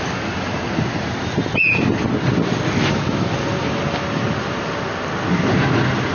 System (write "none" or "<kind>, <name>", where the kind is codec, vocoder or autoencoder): none